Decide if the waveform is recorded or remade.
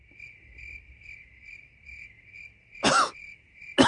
recorded